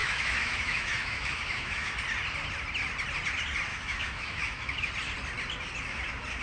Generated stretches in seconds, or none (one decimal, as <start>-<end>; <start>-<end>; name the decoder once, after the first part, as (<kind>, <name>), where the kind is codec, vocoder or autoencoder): 0.0-2.0 (autoencoder, DAC-VAE); 3.7-4.9